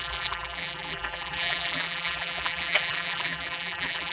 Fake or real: fake